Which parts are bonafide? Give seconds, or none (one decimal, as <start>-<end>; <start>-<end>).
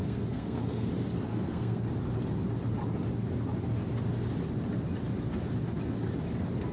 0.9-1.3; 1.8-6.7